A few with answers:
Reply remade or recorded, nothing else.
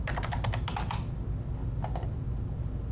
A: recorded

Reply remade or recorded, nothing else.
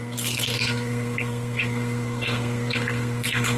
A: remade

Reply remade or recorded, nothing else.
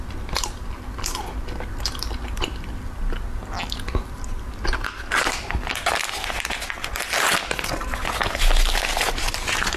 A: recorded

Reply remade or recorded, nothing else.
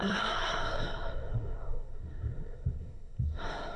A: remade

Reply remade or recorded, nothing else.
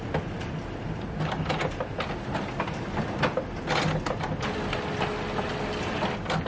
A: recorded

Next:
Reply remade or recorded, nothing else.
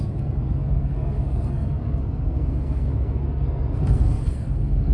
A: remade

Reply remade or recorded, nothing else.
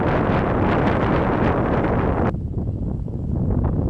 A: recorded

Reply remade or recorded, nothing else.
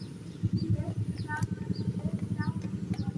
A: recorded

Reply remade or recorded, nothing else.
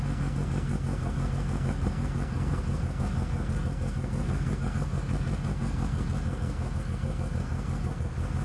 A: remade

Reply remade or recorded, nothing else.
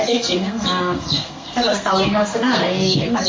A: remade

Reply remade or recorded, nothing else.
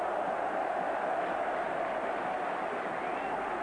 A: recorded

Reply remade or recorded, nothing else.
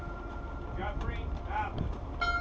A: recorded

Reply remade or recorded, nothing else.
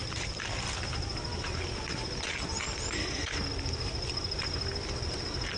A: recorded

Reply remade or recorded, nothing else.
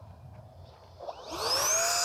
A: recorded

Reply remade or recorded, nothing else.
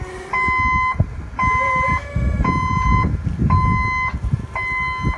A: recorded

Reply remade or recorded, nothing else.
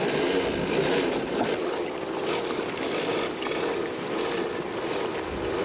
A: recorded